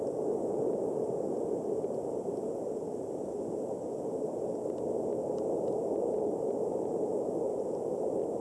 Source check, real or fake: real